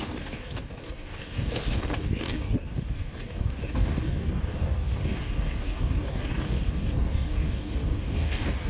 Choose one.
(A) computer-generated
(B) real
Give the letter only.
A